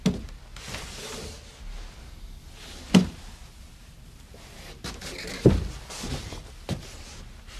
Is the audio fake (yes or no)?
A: no